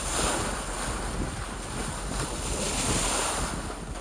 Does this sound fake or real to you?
real